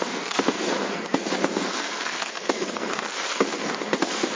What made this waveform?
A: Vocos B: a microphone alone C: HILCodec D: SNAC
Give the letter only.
D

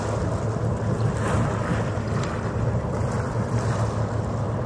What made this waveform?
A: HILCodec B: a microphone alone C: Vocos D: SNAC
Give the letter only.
B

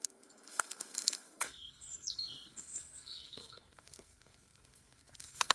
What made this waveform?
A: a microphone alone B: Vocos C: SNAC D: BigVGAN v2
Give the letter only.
C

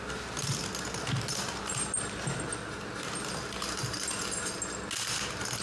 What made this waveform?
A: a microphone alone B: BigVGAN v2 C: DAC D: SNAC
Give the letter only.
A